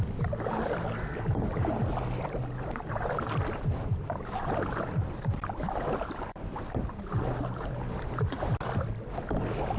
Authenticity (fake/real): real